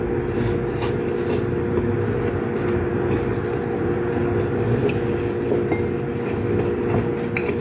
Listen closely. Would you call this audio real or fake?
real